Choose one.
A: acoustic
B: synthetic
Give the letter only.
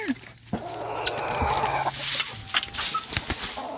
A